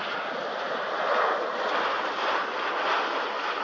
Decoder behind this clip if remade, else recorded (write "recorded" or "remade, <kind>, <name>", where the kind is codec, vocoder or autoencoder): recorded